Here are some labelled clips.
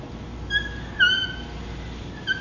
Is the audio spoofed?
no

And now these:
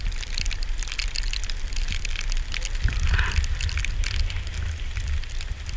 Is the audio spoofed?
no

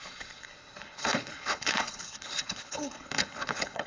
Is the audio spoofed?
yes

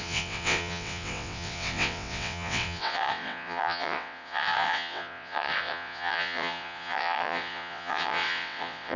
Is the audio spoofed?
yes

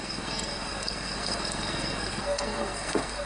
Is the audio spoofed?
yes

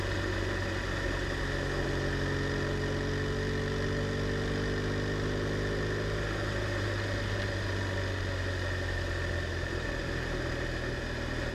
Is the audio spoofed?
no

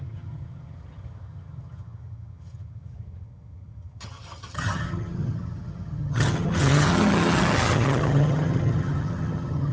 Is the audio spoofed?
yes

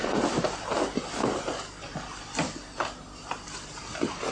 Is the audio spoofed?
no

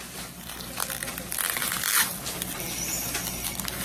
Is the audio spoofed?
no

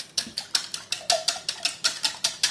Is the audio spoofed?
no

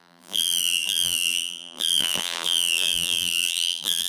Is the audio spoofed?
yes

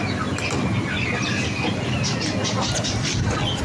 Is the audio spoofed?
no